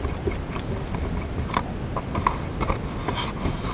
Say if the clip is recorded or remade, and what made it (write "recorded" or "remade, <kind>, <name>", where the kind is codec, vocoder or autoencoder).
recorded